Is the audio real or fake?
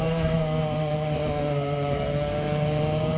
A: fake